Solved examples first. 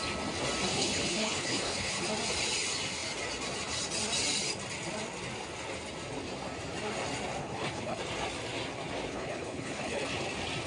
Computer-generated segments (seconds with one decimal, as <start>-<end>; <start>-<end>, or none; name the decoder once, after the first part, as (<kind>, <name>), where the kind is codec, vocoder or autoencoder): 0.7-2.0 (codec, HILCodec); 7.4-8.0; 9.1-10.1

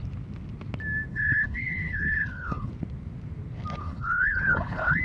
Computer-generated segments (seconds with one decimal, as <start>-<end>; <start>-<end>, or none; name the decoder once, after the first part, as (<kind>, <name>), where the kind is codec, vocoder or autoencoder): 1.1-2.7 (codec, HILCodec); 3.8-5.0

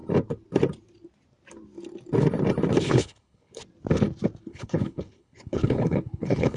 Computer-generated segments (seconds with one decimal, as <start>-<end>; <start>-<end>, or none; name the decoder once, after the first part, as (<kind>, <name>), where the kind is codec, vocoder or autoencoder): 2.8-3.6 (codec, HILCodec); 4.4-6.6